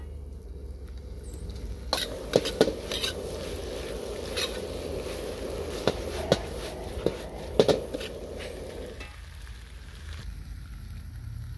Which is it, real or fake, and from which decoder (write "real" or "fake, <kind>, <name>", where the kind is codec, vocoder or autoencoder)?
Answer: real